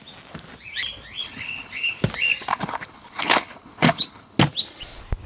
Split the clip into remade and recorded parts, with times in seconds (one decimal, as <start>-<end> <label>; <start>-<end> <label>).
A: 0.0-1.2 recorded; 1.2-2.0 remade; 2.0-2.5 recorded; 2.5-4.4 remade; 4.4-5.3 recorded